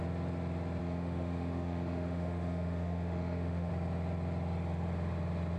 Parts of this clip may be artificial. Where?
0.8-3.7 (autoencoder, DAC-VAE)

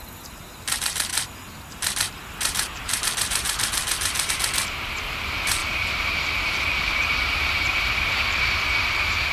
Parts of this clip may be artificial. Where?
0.0-9.3 (vocoder, BigVGAN v2)

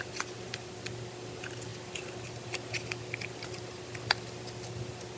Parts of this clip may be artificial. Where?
none

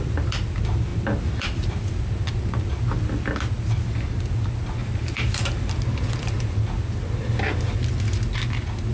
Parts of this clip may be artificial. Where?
4.8-5.9 (vocoder, BigVGAN v2)

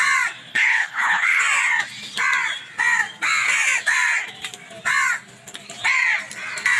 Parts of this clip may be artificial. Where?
0.5-1.4 (codec, HILCodec)

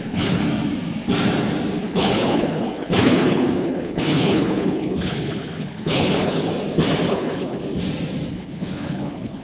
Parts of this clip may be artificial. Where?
0.0-0.4 (codec, HILCodec); 1.8-6.5; 7.1-7.6; 8.3-9.4

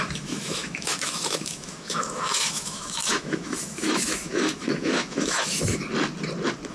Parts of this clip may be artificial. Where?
0.0-5.8 (autoencoder, DAC-VAE)

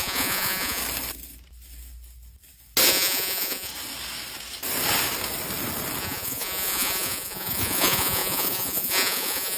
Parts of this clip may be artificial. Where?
0.0-0.8 (vocoder, Vocos); 2.9-3.7; 6.0-9.6